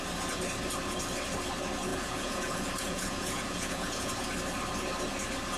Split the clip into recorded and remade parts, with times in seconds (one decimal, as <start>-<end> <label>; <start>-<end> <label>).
0.0-1.9 recorded; 1.9-4.3 remade; 4.3-5.6 recorded